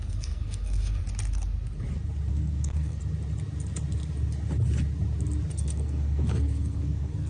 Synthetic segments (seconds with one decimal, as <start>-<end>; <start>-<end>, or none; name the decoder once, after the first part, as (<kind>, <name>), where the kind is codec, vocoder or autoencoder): 0.0-1.0 (codec, SNAC); 2.3-3.0; 5.5-7.3